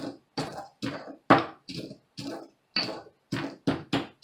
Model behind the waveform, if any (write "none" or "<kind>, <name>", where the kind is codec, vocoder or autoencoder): none